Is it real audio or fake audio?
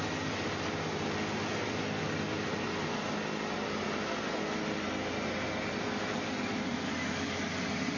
real